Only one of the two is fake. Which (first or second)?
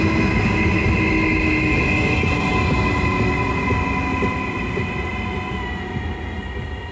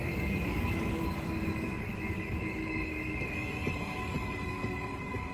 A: second